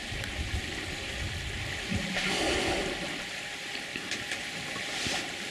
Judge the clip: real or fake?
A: real